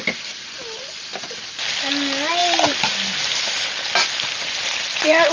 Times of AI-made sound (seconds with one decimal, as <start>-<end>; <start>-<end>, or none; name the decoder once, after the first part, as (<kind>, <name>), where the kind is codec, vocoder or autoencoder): none